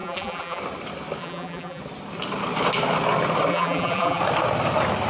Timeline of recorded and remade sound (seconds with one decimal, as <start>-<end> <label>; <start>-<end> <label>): 0.0-0.6 remade; 0.6-1.2 recorded; 1.2-1.8 remade; 1.8-3.5 recorded; 3.5-4.2 remade; 4.2-5.1 recorded